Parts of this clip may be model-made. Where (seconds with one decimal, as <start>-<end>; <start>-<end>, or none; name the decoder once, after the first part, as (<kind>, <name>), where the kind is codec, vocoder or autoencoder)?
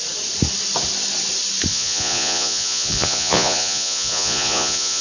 1.7-5.0 (vocoder, Vocos)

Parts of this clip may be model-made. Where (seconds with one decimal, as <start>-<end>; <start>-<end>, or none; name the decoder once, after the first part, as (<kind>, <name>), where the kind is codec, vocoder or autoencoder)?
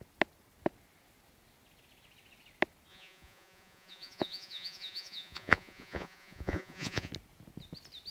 2.9-7.1 (vocoder, Vocos)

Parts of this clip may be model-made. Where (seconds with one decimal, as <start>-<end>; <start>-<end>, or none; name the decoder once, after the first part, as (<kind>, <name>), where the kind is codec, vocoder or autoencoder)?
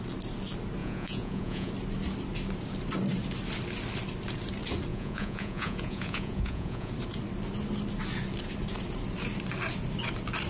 0.8-1.7 (vocoder, Vocos); 4.9-6.9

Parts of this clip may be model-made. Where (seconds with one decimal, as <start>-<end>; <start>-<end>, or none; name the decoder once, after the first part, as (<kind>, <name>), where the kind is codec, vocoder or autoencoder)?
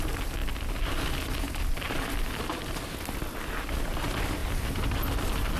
none